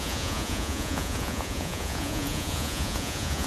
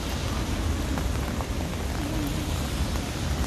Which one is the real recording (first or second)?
second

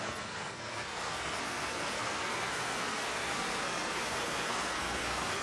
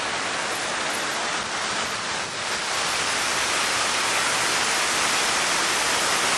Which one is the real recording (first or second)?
second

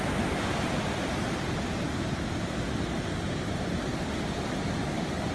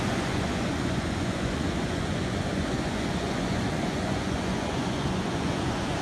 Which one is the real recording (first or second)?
first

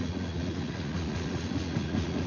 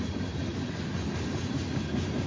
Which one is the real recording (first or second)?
second